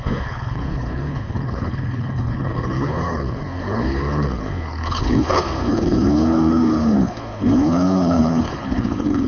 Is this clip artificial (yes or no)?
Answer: yes